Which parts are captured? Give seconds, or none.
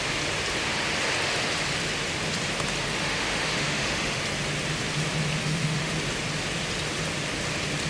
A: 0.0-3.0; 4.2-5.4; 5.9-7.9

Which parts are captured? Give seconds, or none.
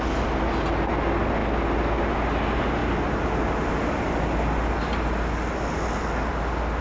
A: 0.0-6.8